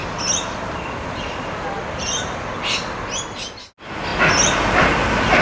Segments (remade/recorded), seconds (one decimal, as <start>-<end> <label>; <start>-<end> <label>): 0.0-5.4 recorded